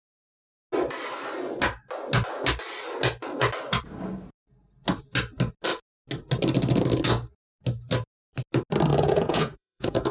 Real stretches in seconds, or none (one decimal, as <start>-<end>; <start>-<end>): 0.0-8.9